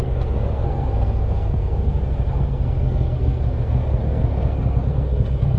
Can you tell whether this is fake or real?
fake